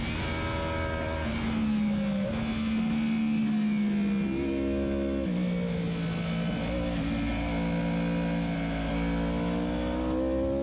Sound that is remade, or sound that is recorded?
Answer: recorded